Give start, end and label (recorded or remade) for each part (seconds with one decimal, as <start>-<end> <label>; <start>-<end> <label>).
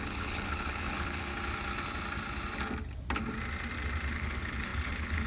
0.0-1.3 remade; 1.3-4.1 recorded; 4.1-5.3 remade